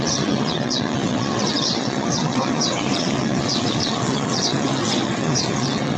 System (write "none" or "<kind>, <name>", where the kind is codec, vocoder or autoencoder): vocoder, WaveNeXt